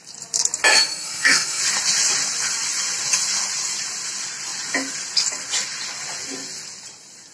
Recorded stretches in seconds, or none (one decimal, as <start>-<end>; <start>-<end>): 0.0-0.7; 1.6-7.3